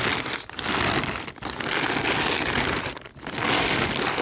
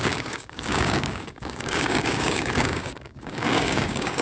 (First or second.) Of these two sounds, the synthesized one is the second